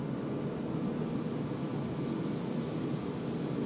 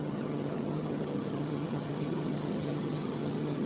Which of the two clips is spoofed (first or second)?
second